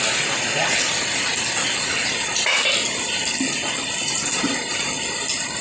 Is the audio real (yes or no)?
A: yes